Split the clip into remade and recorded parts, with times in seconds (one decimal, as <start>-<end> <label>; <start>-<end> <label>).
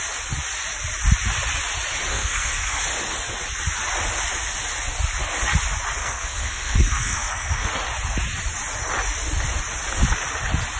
0.0-2.1 recorded; 2.1-2.8 remade; 2.8-6.0 recorded; 6.0-7.7 remade; 7.7-10.8 recorded